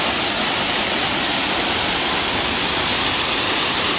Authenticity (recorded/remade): recorded